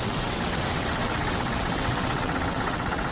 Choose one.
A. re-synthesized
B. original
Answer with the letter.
A